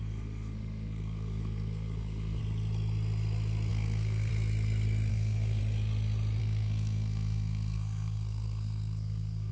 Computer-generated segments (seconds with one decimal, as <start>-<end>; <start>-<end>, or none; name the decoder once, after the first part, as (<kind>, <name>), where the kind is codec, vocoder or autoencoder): 0.0-2.4 (codec, SNAC); 3.7-4.3; 5.1-5.6; 6.4-9.5